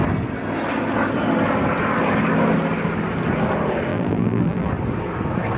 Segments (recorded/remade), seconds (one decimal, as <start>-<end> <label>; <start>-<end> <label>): 0.0-3.9 recorded; 3.9-4.7 remade; 4.7-5.6 recorded